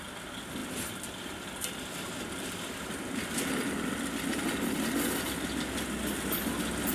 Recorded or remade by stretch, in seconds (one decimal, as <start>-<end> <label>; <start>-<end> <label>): 0.0-6.9 recorded